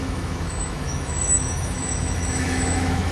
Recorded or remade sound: remade